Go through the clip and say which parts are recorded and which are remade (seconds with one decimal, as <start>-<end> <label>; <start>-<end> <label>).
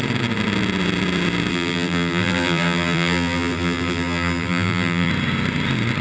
0.0-1.5 recorded; 1.5-5.1 remade; 5.1-6.0 recorded